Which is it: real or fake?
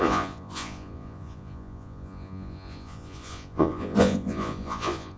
fake